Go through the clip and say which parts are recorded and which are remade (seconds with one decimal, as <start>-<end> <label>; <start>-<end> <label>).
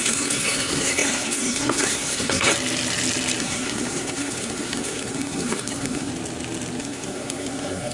0.0-2.5 remade; 2.5-3.4 recorded; 3.4-6.1 remade; 6.1-6.8 recorded; 6.8-7.9 remade